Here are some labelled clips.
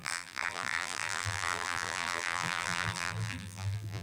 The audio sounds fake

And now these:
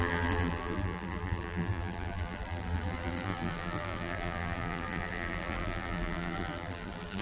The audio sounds fake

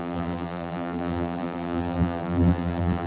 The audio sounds fake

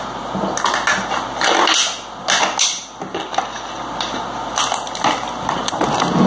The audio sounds real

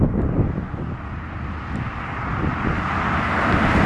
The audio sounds fake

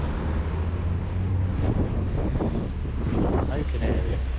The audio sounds real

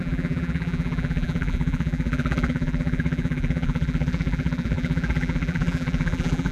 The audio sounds fake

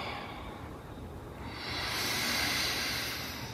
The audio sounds fake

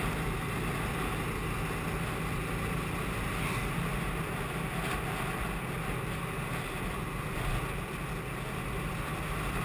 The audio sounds real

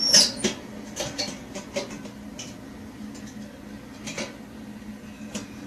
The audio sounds real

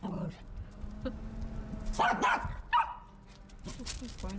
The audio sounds real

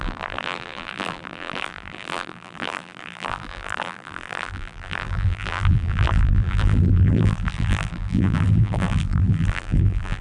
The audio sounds fake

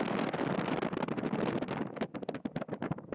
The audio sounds real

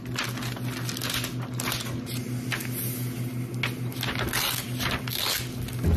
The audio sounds real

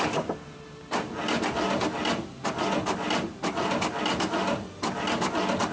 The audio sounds real